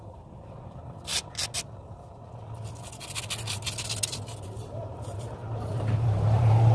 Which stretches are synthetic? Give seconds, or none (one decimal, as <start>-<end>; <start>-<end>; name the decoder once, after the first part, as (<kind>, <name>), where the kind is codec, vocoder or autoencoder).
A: 0.0-1.1 (vocoder, BigVGAN v2); 4.6-6.7